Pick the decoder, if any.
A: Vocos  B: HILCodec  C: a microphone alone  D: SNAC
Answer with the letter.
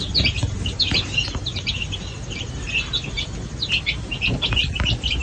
C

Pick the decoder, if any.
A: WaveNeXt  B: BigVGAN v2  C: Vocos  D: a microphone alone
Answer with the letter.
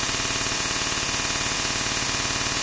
D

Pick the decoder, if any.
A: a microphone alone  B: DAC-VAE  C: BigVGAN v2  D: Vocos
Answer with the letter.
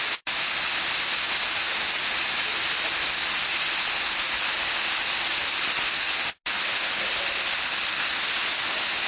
A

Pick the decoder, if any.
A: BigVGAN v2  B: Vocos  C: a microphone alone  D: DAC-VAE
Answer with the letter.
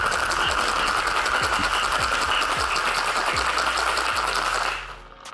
C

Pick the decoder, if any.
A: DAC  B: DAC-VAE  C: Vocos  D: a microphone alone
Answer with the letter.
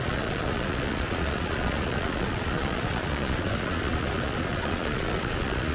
C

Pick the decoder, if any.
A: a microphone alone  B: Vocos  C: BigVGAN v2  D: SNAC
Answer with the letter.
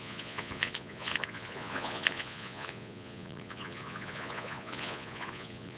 B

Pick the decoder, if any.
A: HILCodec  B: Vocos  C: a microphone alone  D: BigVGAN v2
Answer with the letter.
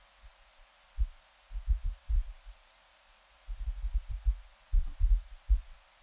B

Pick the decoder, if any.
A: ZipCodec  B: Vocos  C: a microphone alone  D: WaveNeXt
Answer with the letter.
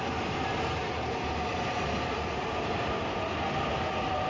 C